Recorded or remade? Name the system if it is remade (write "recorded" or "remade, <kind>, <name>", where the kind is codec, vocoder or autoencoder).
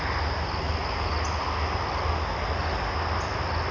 recorded